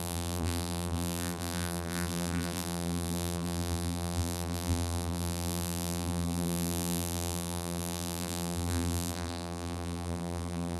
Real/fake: fake